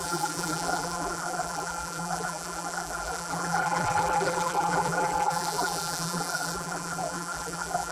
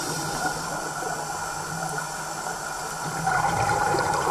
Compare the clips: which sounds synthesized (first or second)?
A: first